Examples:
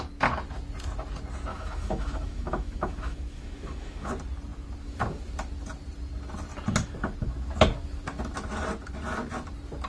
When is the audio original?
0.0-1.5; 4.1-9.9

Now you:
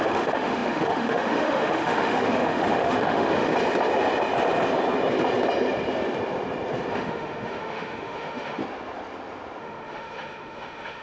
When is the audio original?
3.5-6.9; 8.6-9.6

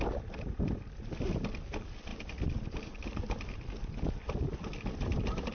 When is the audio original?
0.0-5.5

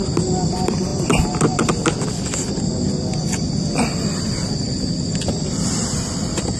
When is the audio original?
0.0-6.6

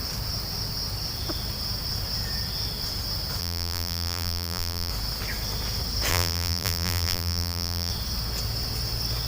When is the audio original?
0.0-3.4; 4.9-6.1; 7.9-9.3

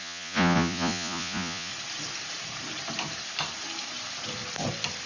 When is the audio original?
1.7-5.1